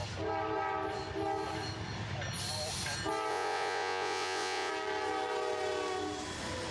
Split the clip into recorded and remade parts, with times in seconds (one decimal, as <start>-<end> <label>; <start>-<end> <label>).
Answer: 0.0-3.3 recorded; 3.3-4.7 remade; 4.7-6.7 recorded